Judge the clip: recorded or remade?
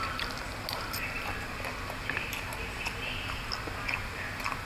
recorded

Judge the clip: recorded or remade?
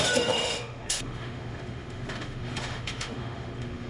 remade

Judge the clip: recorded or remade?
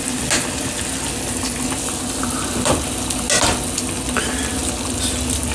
recorded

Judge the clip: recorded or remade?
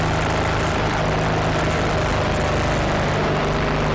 recorded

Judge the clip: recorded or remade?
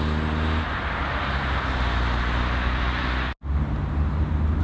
recorded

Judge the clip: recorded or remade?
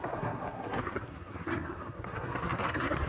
remade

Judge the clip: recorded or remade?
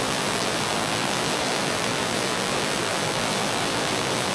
remade